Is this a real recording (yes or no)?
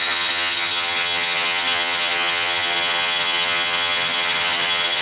no